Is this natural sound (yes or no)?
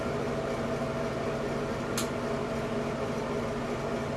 yes